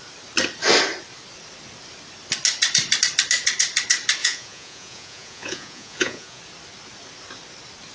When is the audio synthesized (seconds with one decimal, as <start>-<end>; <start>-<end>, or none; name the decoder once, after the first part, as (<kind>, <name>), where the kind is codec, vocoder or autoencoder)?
4.2-6.4 (vocoder, Vocos)